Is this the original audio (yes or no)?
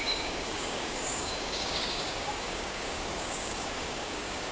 no